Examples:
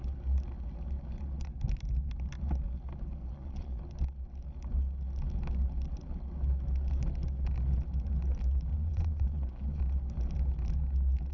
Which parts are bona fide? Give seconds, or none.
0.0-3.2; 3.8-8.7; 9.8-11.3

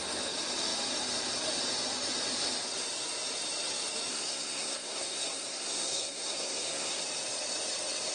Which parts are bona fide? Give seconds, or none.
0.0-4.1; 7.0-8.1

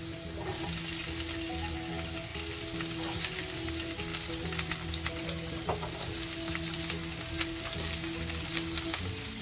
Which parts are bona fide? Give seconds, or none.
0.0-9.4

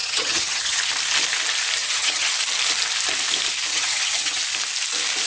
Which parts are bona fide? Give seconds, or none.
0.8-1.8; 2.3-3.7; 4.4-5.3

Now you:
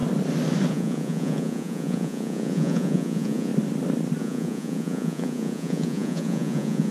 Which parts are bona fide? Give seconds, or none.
0.0-0.7; 3.5-4.2

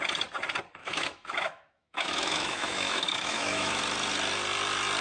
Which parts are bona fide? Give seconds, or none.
0.0-0.8; 3.8-5.0